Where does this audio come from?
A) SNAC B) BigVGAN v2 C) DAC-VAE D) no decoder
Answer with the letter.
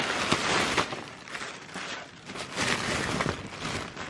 D